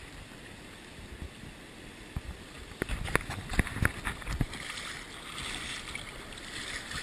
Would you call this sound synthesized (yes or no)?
no